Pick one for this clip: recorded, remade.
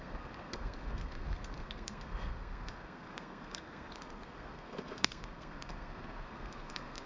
remade